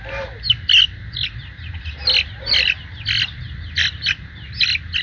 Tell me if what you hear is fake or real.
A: real